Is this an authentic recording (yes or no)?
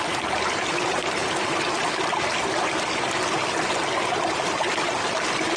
yes